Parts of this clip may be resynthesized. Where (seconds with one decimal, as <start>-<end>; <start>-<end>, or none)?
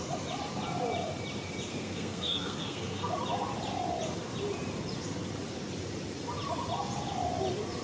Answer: 1.7-3.1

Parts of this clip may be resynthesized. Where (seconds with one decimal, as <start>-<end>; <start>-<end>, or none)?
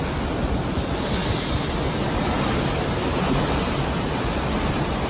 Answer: none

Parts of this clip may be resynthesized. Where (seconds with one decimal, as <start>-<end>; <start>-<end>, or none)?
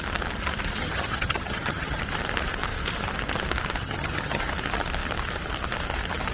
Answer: 0.8-2.0; 3.8-4.4